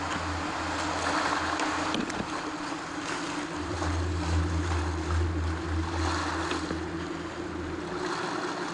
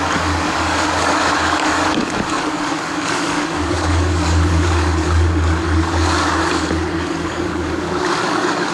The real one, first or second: first